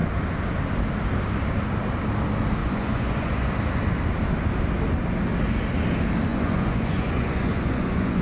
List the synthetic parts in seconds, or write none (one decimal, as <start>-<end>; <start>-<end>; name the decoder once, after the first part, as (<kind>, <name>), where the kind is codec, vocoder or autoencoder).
2.6-3.5 (vocoder, Vocos); 6.3-8.2